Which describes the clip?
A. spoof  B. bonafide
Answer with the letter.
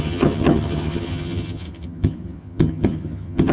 A